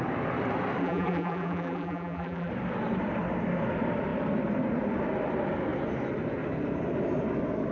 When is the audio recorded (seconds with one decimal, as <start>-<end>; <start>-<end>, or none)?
0.0-0.8; 2.5-7.7